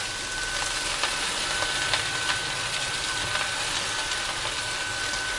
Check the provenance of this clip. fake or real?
real